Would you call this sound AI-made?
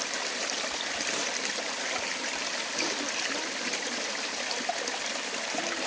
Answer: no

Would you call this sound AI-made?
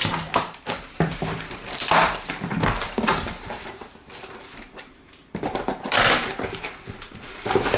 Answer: yes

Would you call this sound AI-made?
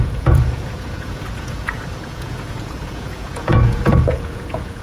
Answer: yes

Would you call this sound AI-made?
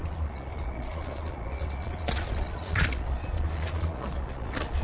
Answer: yes